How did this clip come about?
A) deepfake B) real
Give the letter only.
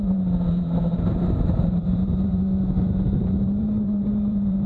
A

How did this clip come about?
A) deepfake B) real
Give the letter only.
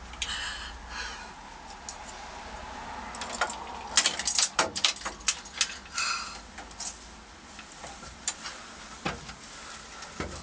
B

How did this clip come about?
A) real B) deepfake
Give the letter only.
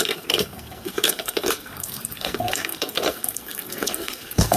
B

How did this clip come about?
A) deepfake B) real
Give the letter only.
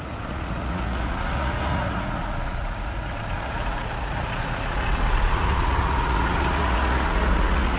A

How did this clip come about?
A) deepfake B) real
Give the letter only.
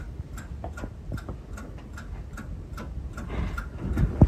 B